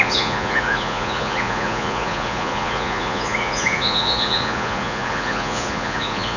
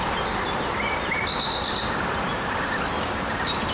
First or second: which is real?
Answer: second